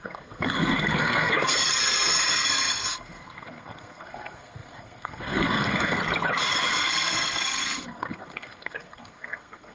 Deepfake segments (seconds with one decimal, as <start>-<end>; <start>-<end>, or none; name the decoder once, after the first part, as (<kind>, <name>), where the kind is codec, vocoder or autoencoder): 0.0-6.0 (codec, SNAC); 6.8-9.7